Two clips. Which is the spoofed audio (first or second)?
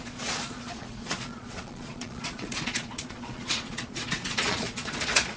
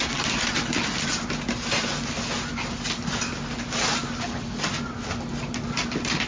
first